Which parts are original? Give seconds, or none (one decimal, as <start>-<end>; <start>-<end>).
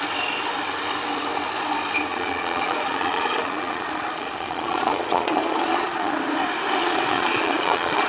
0.0-2.1; 6.2-6.8